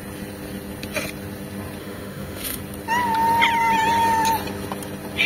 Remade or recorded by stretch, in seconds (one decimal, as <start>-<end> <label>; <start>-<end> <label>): 0.0-1.8 recorded; 1.8-2.6 remade; 2.6-5.3 recorded